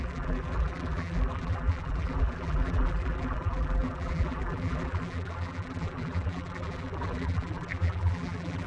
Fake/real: fake